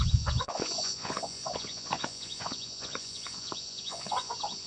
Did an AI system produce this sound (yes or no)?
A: yes